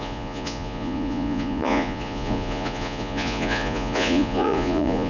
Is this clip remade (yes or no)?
yes